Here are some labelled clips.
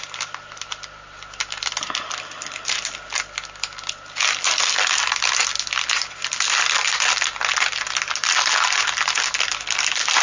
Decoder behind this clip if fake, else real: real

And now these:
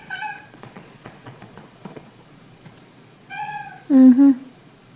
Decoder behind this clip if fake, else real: fake, vocoder, Vocos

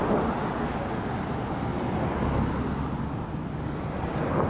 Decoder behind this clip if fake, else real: real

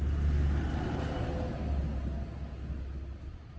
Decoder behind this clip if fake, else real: real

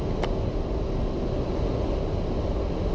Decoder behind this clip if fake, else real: real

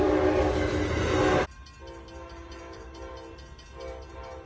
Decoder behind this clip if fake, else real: real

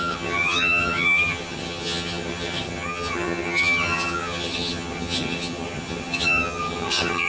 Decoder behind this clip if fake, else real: fake, vocoder, HiFi-GAN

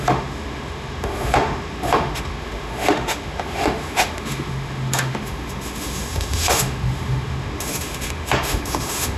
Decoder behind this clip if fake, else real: fake, autoencoder, DAC-VAE